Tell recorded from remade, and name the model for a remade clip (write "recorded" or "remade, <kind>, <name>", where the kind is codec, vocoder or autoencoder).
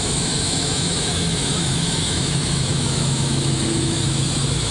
remade, autoencoder, DAC-VAE